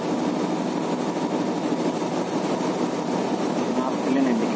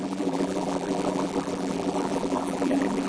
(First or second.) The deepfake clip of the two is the second